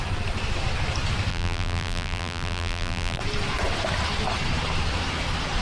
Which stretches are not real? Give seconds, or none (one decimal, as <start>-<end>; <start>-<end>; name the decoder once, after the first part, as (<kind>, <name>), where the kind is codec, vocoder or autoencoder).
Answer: 1.3-3.2 (vocoder, BigVGAN v2)